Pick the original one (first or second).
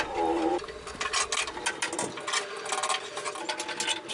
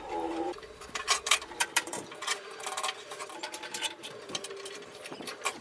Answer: first